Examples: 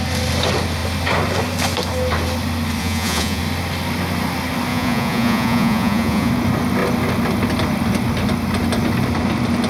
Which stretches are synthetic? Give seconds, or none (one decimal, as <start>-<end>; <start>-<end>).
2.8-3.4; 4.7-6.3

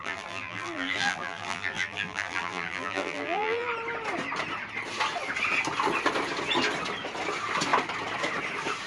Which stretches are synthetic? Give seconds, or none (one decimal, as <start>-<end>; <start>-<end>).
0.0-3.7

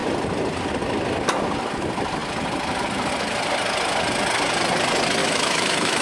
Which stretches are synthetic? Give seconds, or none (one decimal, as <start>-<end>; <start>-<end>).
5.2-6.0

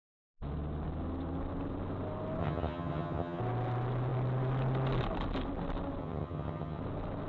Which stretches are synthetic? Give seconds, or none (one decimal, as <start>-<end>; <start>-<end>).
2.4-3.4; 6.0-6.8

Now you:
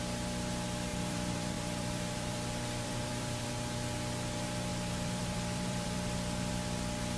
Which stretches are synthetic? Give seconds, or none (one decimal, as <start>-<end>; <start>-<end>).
0.9-3.5; 4.7-6.5